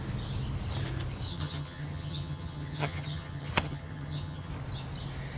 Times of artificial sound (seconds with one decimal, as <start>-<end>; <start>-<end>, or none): 1.3-4.5